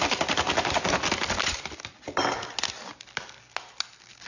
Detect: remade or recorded recorded